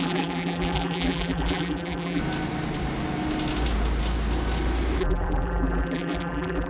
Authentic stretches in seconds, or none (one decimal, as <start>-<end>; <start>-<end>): 2.2-5.0